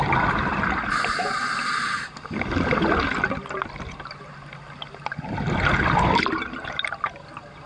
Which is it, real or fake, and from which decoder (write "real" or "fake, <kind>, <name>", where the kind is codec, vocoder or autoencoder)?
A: real